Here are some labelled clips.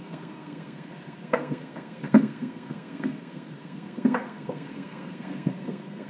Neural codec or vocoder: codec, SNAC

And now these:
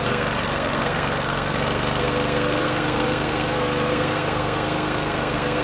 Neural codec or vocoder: codec, SNAC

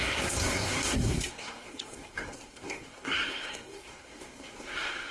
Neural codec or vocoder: codec, SNAC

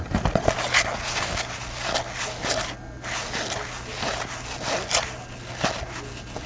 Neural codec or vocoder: none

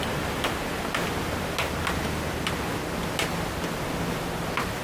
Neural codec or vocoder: none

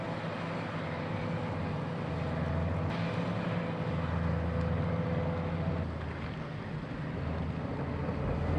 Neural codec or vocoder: none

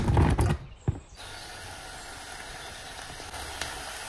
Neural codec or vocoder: none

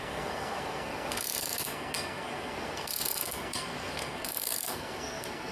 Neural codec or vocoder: codec, SNAC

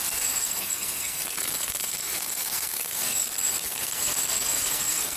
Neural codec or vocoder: codec, SNAC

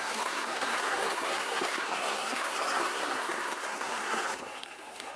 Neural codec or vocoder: codec, SNAC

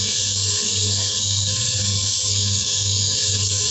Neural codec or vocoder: codec, SNAC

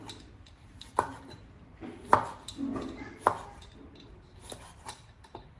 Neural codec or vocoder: none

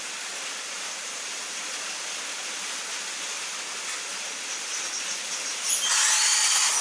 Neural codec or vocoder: none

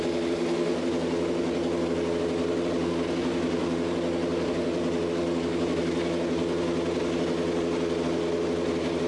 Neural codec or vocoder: none